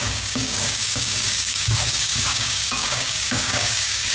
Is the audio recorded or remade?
remade